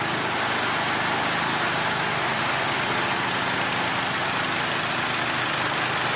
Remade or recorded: recorded